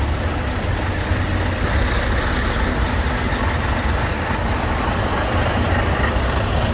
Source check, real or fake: real